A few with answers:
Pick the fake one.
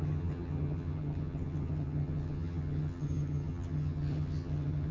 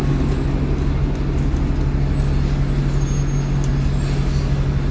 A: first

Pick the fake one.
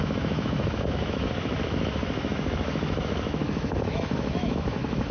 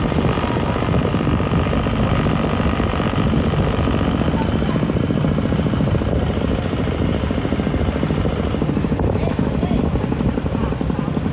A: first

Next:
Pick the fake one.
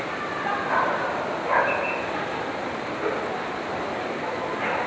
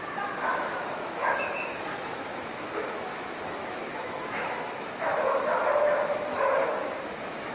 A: second